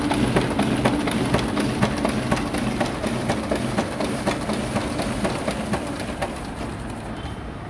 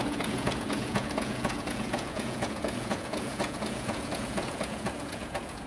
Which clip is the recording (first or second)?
first